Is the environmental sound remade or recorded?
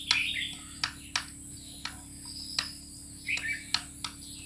recorded